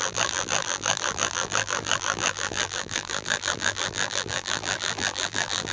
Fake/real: fake